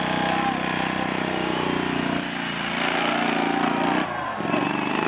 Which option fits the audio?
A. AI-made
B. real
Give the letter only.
B